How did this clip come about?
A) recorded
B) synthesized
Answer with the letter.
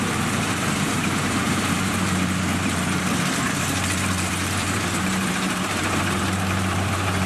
B